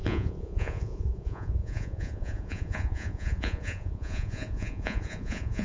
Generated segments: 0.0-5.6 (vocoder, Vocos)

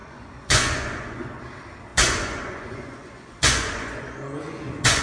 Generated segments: 0.0-1.4 (vocoder, Vocos); 1.9-5.0

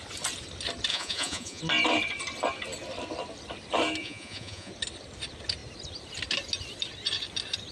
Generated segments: 0.9-1.6 (vocoder, Vocos); 4.0-4.7

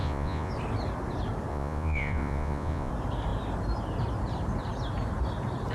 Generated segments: 0.0-0.5 (vocoder, Vocos); 1.5-2.9